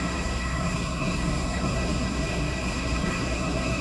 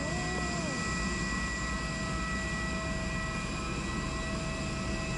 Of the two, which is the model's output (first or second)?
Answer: first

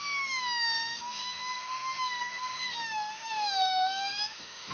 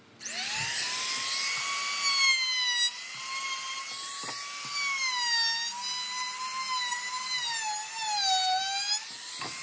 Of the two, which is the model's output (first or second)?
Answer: first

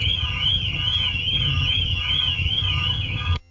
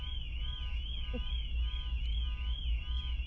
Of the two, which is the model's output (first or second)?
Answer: first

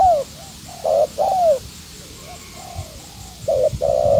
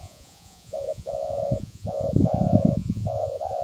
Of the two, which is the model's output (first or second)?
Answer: second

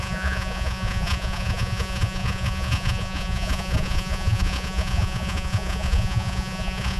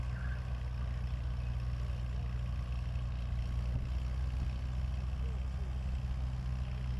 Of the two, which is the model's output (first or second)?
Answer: first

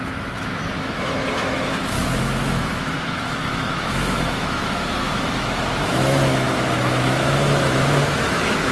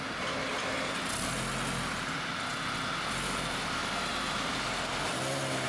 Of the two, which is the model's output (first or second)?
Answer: first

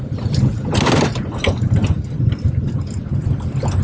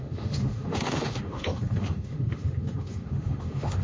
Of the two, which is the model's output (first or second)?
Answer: second